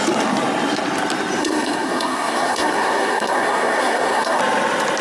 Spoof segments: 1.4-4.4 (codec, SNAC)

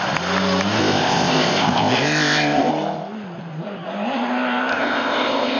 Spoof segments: 0.8-2.7 (codec, ZipCodec); 4.7-5.6

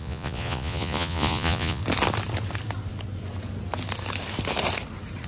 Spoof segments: 0.0-1.8 (vocoder, Vocos)

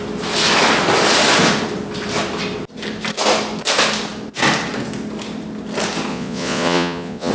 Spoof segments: 6.1-7.3 (vocoder, Vocos)

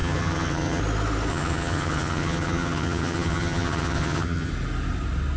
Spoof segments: 0.0-0.8 (vocoder, HiFi-GAN); 1.3-4.5

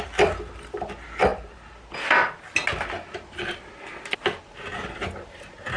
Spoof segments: none

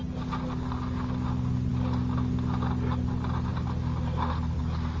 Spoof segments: none